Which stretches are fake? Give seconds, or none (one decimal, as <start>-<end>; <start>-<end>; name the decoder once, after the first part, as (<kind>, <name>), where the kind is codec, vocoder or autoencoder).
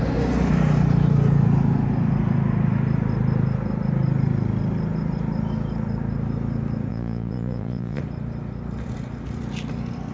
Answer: 6.9-8.0 (vocoder, Vocos)